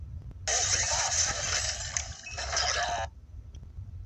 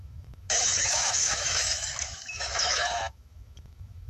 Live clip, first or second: first